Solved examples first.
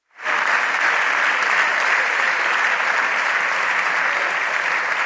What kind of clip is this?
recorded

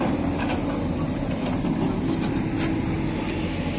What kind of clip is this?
recorded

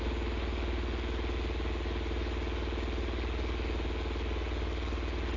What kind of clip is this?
recorded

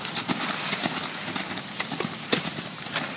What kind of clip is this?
remade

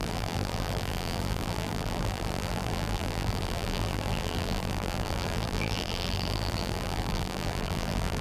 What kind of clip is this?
remade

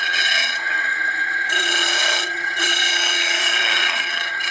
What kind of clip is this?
remade